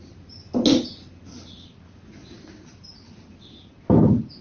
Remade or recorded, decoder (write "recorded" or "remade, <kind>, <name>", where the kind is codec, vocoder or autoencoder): recorded